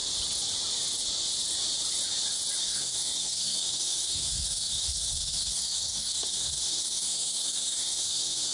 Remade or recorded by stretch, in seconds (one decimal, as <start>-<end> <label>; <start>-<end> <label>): 0.0-2.6 recorded; 2.6-8.5 remade